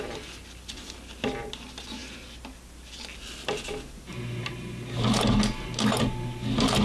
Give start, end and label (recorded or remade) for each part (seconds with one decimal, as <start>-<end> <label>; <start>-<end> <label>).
0.0-6.8 recorded